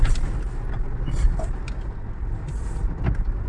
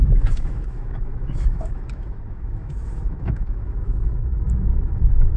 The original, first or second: first